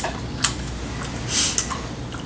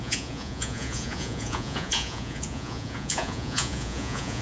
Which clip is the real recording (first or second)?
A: first